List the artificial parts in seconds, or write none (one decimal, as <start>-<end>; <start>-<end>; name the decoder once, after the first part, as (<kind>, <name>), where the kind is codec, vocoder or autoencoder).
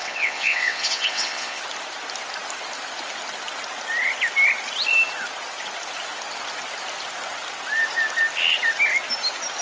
0.0-1.6 (vocoder, WaveNeXt)